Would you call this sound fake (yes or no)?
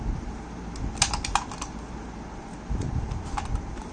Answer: no